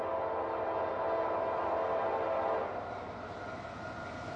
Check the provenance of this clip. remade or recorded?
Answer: recorded